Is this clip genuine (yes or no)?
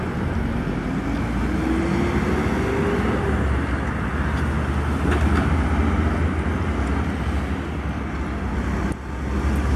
yes